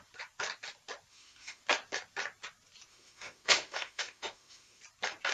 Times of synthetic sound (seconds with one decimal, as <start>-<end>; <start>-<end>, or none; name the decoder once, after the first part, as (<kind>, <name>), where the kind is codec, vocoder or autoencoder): 1.1-1.6 (autoencoder, DAC-VAE); 2.9-4.8